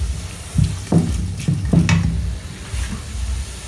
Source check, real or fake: real